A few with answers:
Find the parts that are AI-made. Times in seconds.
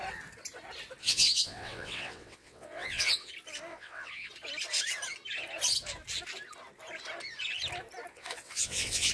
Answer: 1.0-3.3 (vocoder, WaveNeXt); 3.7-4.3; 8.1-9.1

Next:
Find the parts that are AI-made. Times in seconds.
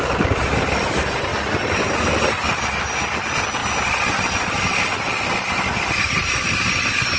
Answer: none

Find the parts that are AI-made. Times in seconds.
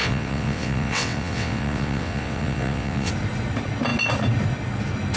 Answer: 0.0-3.1 (vocoder, WaveNeXt)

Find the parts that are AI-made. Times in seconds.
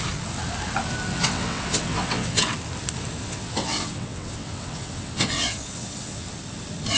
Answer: 1.1-2.4 (vocoder, WaveNeXt); 3.2-6.3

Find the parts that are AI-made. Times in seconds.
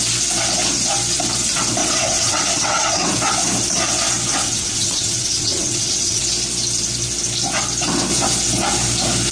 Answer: 1.8-3.1 (vocoder, WaveNeXt); 4.4-6.2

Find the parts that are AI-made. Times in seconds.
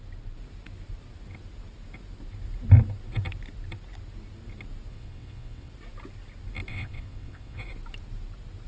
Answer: 4.9-5.7 (vocoder, WaveNeXt); 6.7-7.6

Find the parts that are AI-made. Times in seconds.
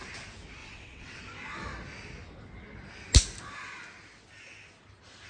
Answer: 0.6-1.2 (vocoder, WaveNeXt)